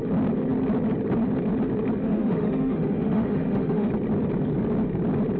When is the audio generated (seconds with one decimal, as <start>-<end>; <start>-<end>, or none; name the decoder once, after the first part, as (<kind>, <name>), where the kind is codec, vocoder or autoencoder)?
2.0-3.9 (autoencoder, DAC-VAE)